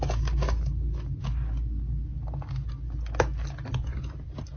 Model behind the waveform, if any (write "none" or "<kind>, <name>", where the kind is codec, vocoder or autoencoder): none